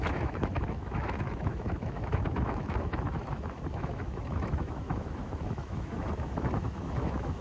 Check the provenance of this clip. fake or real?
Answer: fake